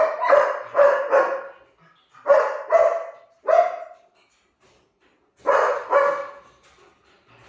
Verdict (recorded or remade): recorded